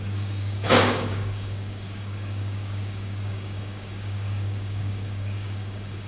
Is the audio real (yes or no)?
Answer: no